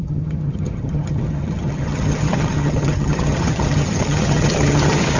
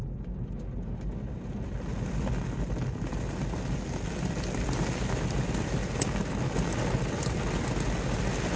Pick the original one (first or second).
second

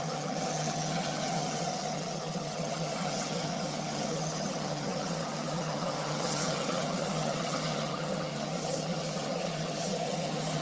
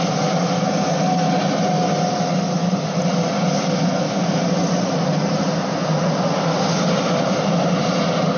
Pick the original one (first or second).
second